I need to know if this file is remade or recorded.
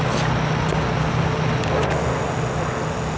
recorded